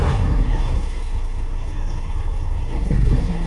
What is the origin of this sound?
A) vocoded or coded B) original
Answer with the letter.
A